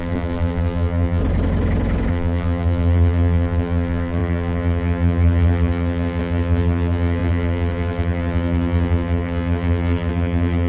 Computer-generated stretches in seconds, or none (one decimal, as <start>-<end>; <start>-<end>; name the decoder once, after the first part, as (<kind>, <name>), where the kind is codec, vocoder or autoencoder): 0.0-1.2 (vocoder, BigVGAN v2); 2.1-10.7